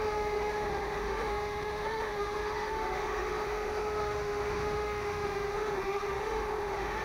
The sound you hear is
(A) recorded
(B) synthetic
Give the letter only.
B